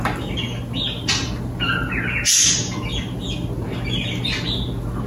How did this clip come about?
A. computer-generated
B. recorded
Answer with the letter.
B